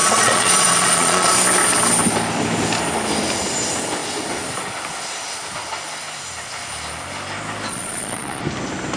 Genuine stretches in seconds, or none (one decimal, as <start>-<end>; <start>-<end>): 1.3-7.7; 8.4-9.0